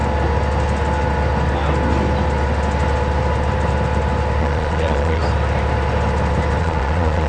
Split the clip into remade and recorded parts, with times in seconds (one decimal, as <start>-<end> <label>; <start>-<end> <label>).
0.0-4.4 recorded; 4.4-5.2 remade; 5.2-6.6 recorded; 6.6-7.3 remade